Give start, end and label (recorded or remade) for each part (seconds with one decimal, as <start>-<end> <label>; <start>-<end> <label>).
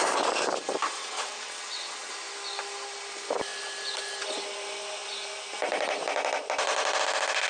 0.0-1.0 recorded; 1.0-2.1 remade; 2.1-7.5 recorded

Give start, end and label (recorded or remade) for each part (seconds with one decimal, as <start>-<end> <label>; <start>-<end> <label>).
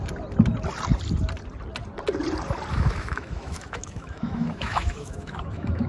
0.0-2.7 recorded; 2.7-5.9 remade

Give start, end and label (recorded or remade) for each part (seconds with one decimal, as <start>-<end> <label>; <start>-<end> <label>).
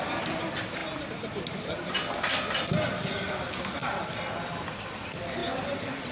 0.0-6.1 recorded